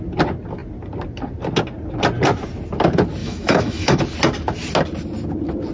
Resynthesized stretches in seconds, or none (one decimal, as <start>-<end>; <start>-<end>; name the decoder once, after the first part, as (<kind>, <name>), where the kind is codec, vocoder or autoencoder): 3.2-4.0 (autoencoder, DAC-VAE)